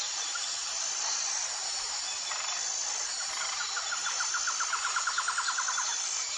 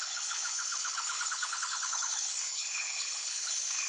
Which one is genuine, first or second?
first